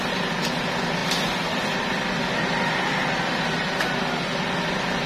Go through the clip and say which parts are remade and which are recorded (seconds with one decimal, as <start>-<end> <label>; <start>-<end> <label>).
0.0-5.1 recorded